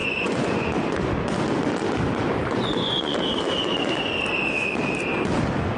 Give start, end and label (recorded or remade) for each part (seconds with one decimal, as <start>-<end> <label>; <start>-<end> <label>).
0.0-0.7 remade; 0.7-2.4 recorded; 2.4-3.2 remade; 3.2-5.8 recorded